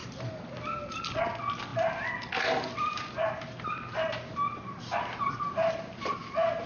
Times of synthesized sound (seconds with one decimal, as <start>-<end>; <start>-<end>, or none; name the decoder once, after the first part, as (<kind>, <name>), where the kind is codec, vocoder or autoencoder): none